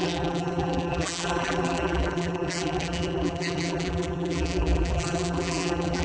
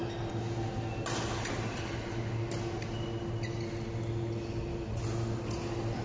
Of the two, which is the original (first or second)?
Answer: second